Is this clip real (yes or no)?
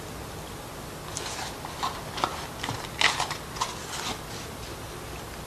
yes